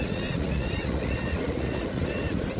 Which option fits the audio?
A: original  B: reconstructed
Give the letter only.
B